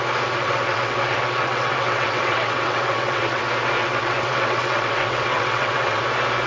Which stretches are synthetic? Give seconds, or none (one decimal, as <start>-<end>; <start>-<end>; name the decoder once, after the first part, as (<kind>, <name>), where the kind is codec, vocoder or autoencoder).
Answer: 0.4-3.4 (vocoder, WaveNeXt); 3.8-6.0